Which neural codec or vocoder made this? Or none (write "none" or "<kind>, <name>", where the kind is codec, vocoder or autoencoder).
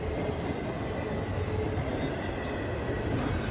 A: none